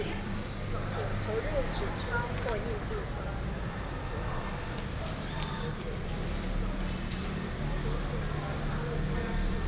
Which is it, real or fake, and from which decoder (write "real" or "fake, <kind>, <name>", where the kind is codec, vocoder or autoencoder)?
real